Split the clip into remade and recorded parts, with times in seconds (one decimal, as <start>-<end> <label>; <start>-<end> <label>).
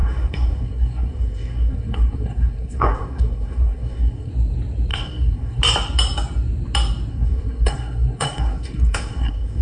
0.0-4.3 remade; 4.3-4.9 recorded; 4.9-5.6 remade; 5.6-7.1 recorded; 7.1-9.6 remade